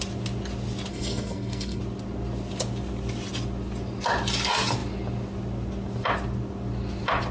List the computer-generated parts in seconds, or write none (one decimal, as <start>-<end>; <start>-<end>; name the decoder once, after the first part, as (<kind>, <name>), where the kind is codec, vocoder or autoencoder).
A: 0.9-1.8 (codec, SNAC)